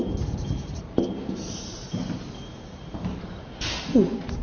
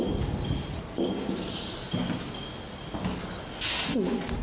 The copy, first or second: first